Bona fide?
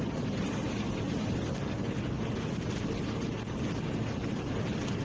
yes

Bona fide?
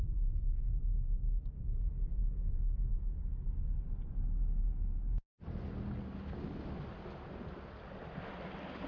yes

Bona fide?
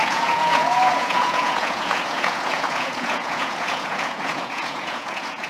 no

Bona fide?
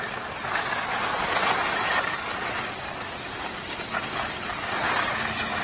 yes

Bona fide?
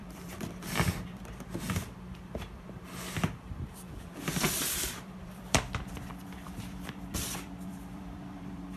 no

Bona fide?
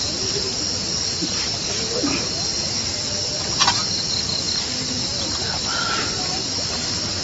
yes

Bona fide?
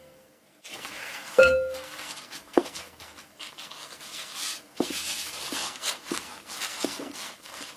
no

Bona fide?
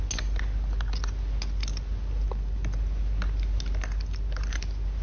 yes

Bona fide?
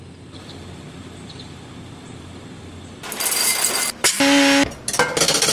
yes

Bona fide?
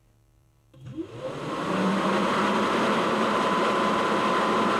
no